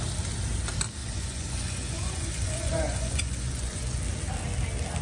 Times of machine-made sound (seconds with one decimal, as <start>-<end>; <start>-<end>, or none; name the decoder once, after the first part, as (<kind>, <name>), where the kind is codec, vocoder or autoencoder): 1.0-4.0 (vocoder, Vocos)